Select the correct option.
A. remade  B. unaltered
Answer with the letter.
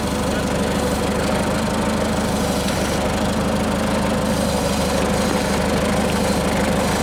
B